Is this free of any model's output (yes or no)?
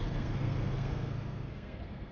no